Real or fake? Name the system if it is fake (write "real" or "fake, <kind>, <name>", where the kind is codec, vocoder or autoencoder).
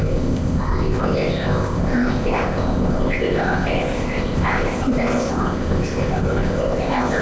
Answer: fake, codec, ZipCodec